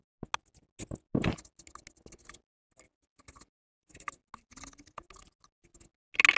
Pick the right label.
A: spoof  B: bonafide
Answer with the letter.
B